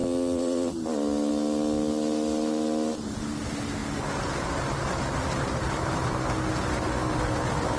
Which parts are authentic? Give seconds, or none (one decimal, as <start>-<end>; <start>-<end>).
0.0-7.8